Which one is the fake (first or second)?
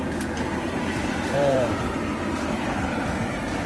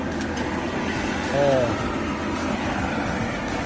first